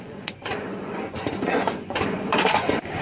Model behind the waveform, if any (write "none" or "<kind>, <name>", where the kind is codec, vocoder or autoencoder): vocoder, Vocos